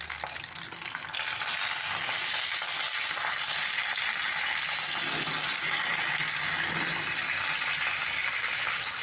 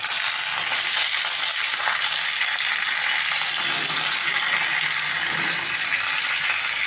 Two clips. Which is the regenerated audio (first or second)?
second